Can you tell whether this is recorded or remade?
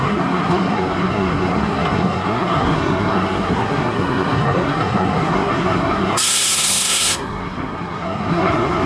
remade